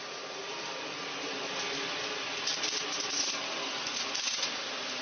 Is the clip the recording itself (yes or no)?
yes